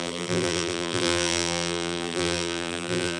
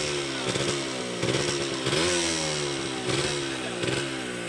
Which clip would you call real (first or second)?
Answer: second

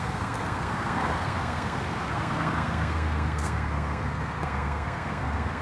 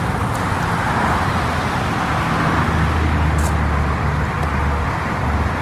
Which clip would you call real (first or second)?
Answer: second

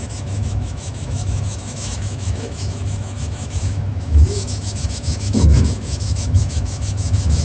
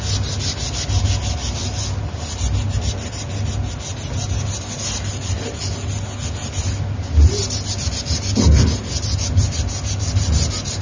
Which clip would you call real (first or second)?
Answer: second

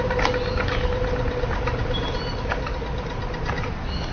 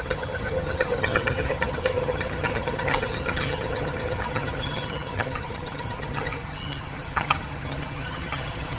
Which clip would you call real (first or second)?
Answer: first